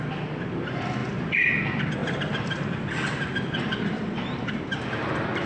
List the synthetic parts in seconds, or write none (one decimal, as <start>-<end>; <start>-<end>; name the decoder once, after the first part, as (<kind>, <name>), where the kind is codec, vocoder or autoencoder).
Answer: 1.0-1.5 (vocoder, BigVGAN v2); 2.0-4.6